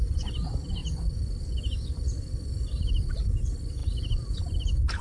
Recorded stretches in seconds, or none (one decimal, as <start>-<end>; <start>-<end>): 0.0-0.8; 2.6-3.8; 4.4-5.0